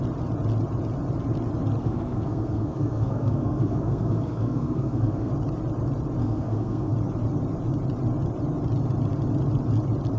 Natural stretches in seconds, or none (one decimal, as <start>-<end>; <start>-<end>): 0.0-1.8; 5.3-6.2; 6.9-10.2